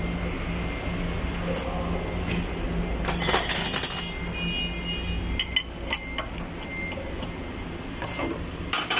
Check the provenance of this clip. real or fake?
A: real